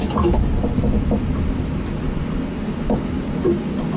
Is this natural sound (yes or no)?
yes